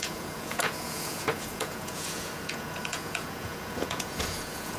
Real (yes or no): no